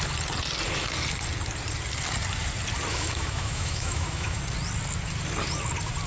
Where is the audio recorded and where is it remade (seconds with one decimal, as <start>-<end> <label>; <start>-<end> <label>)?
0.0-2.9 recorded; 2.9-4.4 remade; 4.4-6.1 recorded